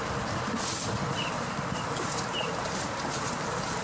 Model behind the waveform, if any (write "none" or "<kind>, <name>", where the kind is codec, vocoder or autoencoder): none